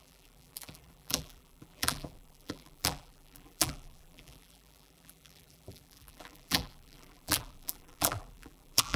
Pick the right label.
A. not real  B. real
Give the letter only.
A